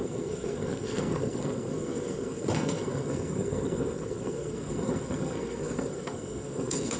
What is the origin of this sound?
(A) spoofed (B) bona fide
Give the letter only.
A